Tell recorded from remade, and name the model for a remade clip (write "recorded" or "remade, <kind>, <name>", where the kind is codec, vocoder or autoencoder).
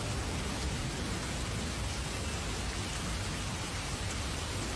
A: recorded